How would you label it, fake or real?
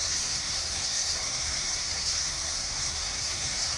fake